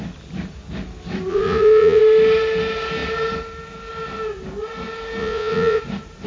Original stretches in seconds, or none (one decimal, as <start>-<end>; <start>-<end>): 0.0-1.3; 2.0-5.2; 5.8-6.3